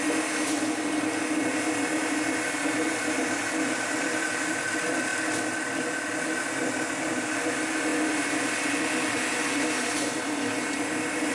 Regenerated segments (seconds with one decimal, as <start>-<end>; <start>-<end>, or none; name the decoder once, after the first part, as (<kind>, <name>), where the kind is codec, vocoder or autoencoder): none